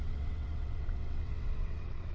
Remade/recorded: remade